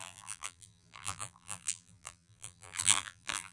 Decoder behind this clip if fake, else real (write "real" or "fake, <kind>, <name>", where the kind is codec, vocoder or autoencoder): fake, vocoder, BigVGAN v2